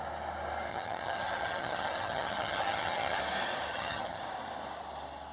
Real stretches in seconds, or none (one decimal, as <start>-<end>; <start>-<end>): 0.0-0.7; 3.2-3.7; 4.2-5.3